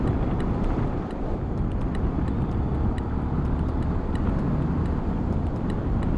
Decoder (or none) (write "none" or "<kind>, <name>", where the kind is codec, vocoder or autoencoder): none